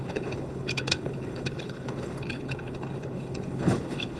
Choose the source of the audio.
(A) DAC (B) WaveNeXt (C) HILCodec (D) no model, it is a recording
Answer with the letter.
C